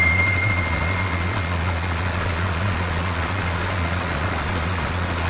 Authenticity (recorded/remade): remade